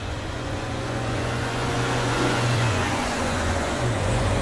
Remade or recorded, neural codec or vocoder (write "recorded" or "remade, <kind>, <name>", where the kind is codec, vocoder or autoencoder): remade, vocoder, Vocos